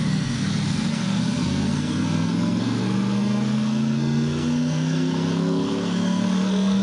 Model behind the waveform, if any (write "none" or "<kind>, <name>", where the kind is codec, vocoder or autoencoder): codec, SNAC